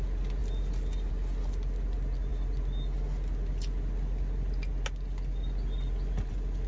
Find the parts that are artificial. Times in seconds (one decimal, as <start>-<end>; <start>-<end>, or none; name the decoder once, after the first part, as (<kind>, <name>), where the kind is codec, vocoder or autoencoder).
none